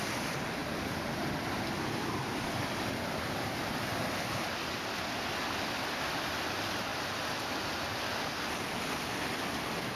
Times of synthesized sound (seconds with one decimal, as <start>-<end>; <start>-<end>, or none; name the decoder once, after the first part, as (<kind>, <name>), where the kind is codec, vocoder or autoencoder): 0.6-3.7 (vocoder, BigVGAN v2)